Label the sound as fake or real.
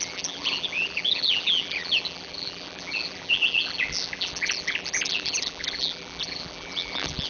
fake